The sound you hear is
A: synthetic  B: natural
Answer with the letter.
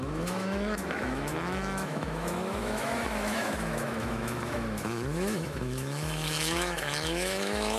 A